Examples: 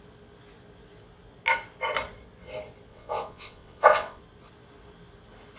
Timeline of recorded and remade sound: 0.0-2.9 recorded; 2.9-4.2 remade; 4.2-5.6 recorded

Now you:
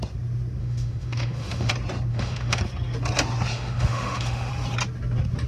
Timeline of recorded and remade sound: 0.0-0.6 recorded; 0.6-1.7 remade; 1.7-2.1 recorded; 2.1-2.6 remade; 2.6-3.5 recorded; 3.5-4.5 remade; 4.5-5.5 recorded

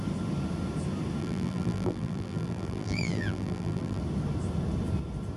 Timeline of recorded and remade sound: 0.0-1.2 recorded; 1.2-4.0 remade; 4.0-5.4 recorded

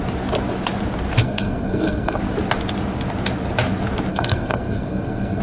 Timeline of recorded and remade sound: 0.0-1.2 recorded; 1.2-2.2 remade; 2.2-4.1 recorded; 4.1-5.4 remade

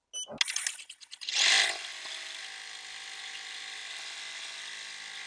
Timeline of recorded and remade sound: 0.0-5.3 recorded

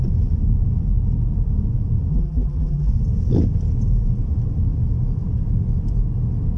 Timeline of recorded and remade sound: 0.0-2.1 recorded; 2.1-2.9 remade; 2.9-6.6 recorded